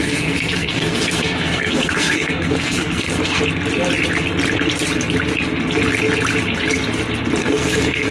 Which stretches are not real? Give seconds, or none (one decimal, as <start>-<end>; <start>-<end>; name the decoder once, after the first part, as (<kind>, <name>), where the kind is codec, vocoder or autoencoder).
0.0-3.4 (codec, SNAC); 7.4-8.1